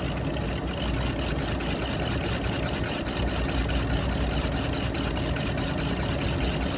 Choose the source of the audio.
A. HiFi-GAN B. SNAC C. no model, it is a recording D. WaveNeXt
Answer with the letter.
C